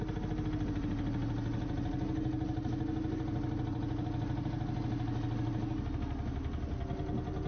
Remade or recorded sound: recorded